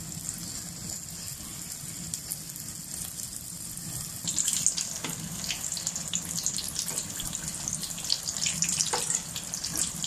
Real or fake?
real